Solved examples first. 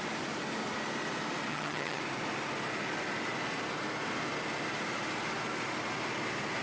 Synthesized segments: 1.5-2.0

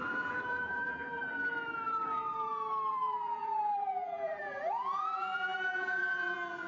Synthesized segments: 0.0-1.2; 2.9-6.7

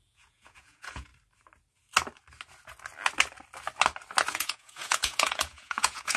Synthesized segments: 0.0-1.1; 4.3-6.2

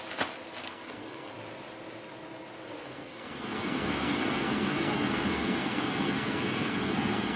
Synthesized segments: 0.6-1.3; 2.8-7.4

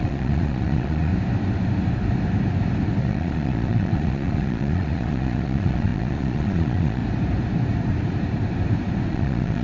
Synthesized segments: 0.0-1.1; 3.0-7.0; 9.1-9.6

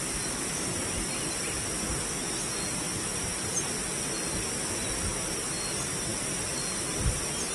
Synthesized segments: none

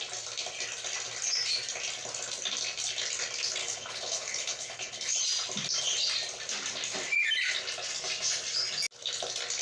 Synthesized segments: 3.6-5.2